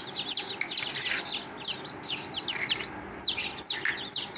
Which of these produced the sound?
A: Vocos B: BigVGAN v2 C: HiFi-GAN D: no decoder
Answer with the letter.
D